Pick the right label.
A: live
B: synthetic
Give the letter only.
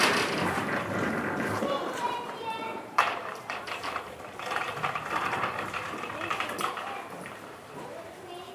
B